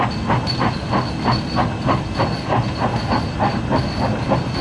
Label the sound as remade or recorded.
recorded